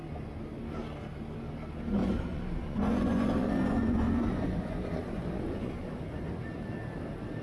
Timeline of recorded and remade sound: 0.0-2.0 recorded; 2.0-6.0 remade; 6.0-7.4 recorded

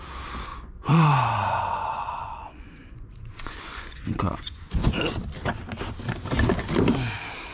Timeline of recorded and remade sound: 0.0-0.5 recorded; 0.5-5.0 remade; 5.0-7.5 recorded

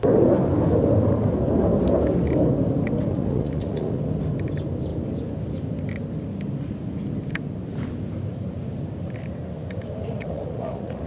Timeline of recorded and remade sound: 0.0-3.1 recorded; 3.1-4.0 remade; 4.0-10.1 recorded; 10.1-11.1 remade

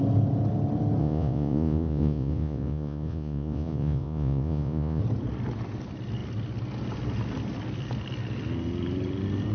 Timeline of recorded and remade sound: 0.0-1.0 recorded; 1.0-5.0 remade; 5.0-9.5 recorded

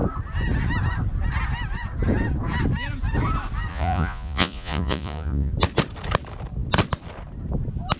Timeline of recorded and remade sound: 0.0-3.7 recorded; 3.7-5.5 remade; 5.5-8.0 recorded